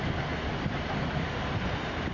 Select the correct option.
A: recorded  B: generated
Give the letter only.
A